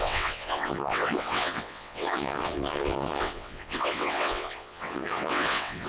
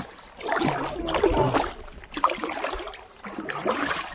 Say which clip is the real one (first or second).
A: second